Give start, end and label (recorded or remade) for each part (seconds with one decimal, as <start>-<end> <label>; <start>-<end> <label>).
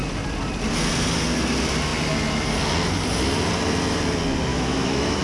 0.0-4.5 recorded; 4.5-5.2 remade